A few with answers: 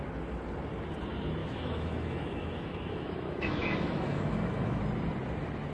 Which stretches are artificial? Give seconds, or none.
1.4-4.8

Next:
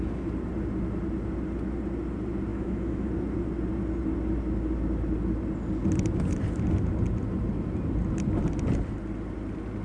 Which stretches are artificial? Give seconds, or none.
2.5-3.1